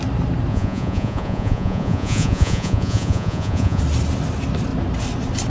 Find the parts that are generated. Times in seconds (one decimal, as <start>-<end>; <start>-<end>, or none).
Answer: 0.5-3.8